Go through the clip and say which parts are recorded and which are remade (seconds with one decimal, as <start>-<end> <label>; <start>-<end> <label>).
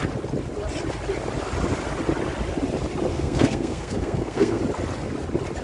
0.0-3.1 recorded; 3.1-4.6 remade; 4.6-5.6 recorded